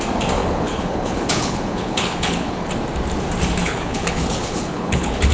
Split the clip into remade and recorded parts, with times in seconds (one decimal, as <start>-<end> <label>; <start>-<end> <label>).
0.0-0.4 recorded; 0.4-2.7 remade; 2.7-3.6 recorded; 3.6-5.3 remade